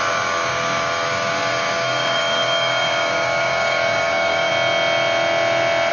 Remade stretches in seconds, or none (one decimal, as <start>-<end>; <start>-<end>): 0.0-4.5